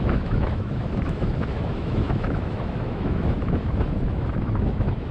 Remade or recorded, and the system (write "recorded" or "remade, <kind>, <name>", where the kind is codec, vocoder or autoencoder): remade, autoencoder, DAC-VAE